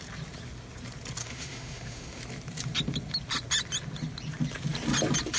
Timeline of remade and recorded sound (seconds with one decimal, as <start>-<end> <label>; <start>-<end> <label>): 0.0-1.2 recorded; 1.2-2.2 remade; 2.2-5.4 recorded